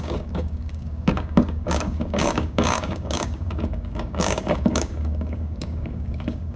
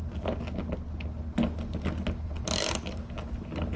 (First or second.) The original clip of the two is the second